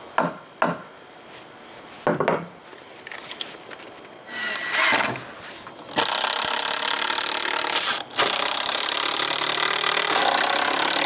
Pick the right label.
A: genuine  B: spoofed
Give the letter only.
A